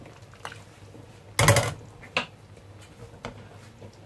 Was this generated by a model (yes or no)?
no